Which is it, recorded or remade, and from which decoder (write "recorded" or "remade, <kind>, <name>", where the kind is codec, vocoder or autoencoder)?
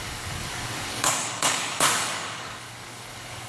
remade, codec, DAC